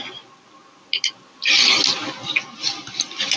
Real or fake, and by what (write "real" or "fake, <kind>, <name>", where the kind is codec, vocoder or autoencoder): real